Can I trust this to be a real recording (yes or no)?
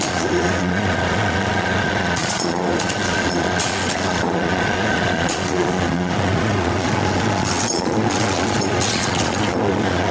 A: no